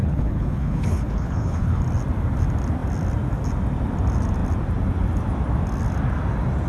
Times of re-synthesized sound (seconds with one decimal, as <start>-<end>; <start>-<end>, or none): 0.0-1.8